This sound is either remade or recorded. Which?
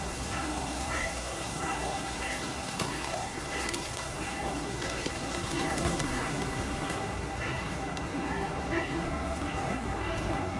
remade